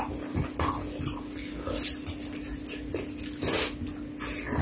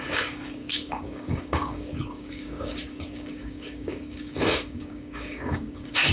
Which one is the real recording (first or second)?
first